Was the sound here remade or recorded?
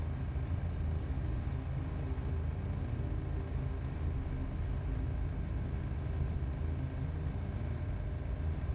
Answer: recorded